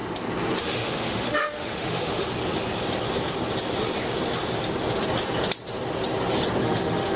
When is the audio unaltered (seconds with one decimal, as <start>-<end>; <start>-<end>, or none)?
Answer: 0.0-0.6; 2.3-6.6